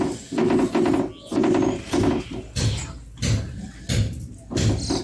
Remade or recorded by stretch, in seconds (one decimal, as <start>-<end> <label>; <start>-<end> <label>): 0.0-5.0 recorded